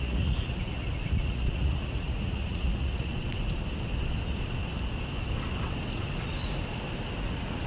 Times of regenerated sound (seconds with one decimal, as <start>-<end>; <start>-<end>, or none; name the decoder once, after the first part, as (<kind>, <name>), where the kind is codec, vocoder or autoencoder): 0.0-3.1 (vocoder, Vocos); 7.2-7.7